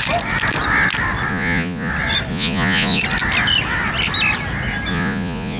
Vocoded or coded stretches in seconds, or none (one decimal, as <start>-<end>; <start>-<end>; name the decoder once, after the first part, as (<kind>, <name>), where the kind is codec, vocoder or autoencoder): 1.3-1.9 (vocoder, Vocos); 2.3-3.0; 4.9-5.6